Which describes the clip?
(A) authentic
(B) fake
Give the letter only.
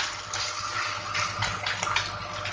A